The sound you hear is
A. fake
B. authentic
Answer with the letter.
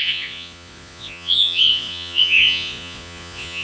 A